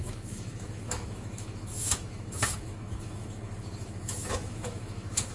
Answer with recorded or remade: remade